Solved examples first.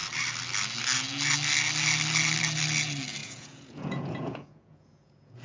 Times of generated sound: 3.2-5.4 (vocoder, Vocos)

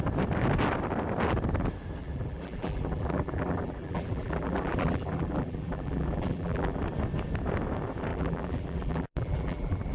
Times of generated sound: 2.0-6.8 (vocoder, BigVGAN v2); 8.1-9.9

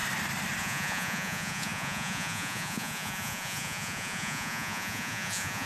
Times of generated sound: 0.6-5.7 (vocoder, Vocos)

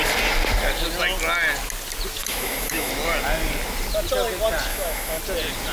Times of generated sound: 2.2-2.9 (autoencoder, DAC-VAE); 4.7-5.2

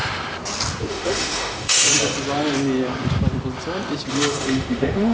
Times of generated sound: 0.9-1.9 (autoencoder, DAC-VAE); 4.1-5.1